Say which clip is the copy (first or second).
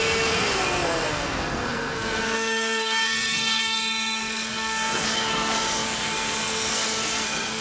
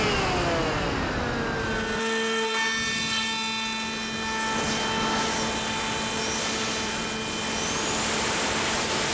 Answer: first